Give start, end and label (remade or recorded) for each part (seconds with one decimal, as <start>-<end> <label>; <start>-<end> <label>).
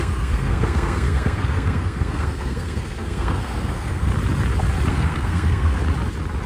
0.0-4.1 remade; 4.1-4.9 recorded; 4.9-5.8 remade; 5.8-6.5 recorded